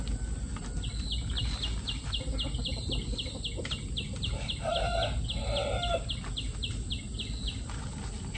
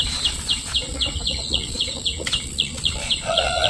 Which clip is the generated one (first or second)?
second